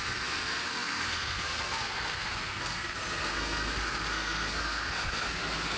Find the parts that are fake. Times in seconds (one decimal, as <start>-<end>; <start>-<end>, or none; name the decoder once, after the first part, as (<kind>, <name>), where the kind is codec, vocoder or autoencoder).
0.0-5.8 (codec, SNAC)